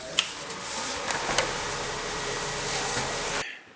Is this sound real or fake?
real